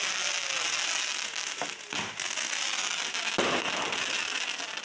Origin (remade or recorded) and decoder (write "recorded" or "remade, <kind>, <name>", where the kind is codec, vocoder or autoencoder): recorded